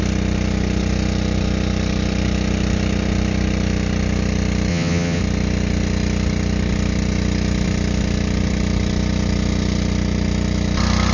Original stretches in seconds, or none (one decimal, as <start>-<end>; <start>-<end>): 0.0-4.7; 5.2-11.1